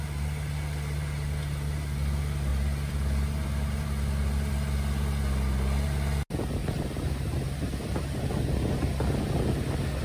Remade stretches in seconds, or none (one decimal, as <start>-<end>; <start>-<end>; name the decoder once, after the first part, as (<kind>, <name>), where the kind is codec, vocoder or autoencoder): 2.5-4.5 (vocoder, BigVGAN v2); 6.6-8.2